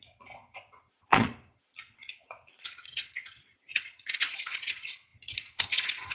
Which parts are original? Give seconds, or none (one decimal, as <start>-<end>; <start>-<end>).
none